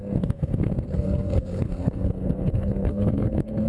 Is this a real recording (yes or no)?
no